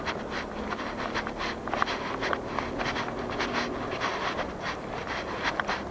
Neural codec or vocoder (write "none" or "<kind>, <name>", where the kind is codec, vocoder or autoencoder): none